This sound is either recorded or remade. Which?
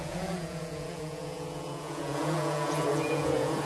remade